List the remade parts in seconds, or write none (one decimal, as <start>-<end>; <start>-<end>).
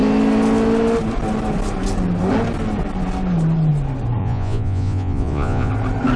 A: 4.2-5.7